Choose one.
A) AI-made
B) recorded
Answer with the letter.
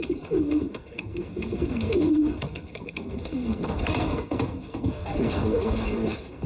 A